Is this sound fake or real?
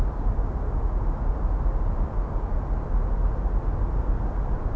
real